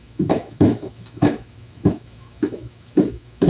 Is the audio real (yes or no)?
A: no